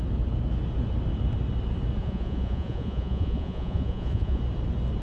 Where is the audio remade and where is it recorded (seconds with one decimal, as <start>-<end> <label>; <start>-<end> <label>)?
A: 0.0-2.0 recorded; 2.0-4.4 remade; 4.4-5.0 recorded